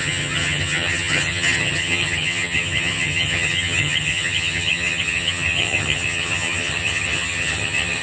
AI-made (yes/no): yes